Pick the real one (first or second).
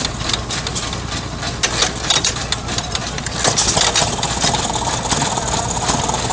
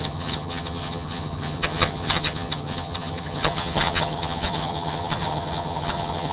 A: first